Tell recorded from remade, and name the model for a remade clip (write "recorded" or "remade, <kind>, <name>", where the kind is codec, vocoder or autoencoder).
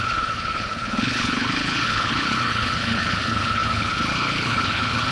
remade, codec, HILCodec